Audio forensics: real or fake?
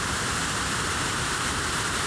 fake